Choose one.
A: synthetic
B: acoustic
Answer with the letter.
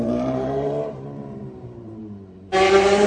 A